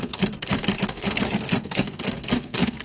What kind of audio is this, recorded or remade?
remade